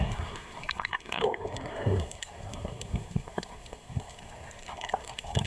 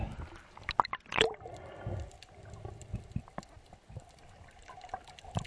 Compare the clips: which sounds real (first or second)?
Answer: second